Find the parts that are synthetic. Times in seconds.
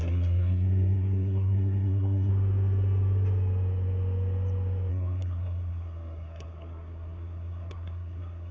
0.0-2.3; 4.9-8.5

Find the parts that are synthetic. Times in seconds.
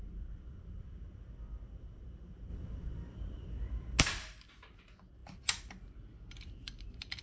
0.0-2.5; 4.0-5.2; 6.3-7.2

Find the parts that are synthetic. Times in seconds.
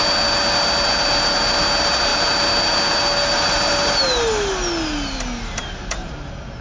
none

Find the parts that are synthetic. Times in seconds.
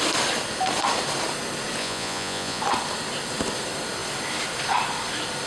1.8-2.6